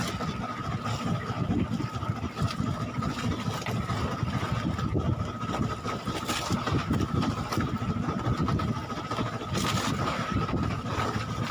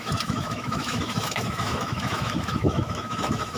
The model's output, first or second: second